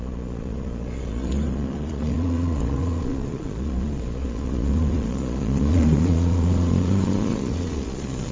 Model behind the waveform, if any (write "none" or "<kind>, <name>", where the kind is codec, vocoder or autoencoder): vocoder, Vocos